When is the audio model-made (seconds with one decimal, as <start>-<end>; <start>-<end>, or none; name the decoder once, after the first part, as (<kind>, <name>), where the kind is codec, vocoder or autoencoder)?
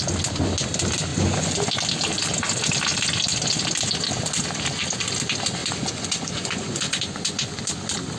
1.1-1.7 (vocoder, Vocos); 5.6-7.6